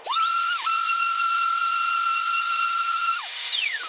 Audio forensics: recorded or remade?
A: remade